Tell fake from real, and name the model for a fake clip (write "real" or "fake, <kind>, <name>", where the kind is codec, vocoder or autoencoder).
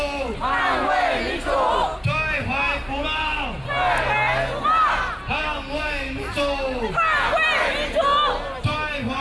real